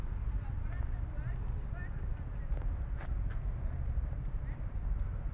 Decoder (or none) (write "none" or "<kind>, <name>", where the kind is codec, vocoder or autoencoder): none